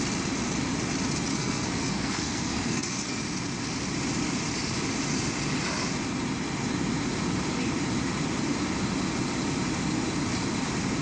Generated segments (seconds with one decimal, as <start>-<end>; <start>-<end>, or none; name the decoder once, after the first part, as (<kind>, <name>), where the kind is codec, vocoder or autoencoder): 1.3-3.2 (codec, SNAC)